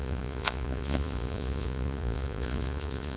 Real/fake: fake